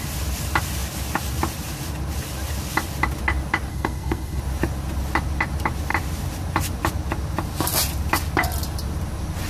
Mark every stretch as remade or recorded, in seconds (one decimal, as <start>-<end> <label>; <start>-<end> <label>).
0.0-3.7 recorded; 3.7-4.4 remade; 4.4-9.5 recorded